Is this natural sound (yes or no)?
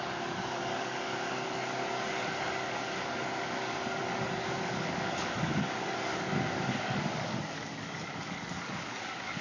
no